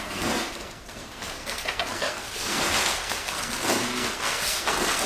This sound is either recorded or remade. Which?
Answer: remade